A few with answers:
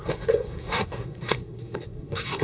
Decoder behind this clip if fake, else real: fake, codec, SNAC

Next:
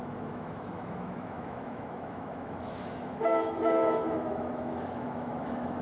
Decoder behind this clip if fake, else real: fake, autoencoder, DAC-VAE